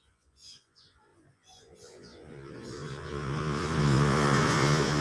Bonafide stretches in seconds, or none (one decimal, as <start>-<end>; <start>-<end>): none